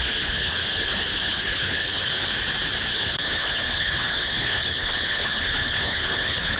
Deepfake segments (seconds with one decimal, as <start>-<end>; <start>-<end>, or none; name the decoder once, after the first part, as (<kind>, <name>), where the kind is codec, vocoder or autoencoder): 0.0-2.3 (codec, HILCodec); 2.9-6.6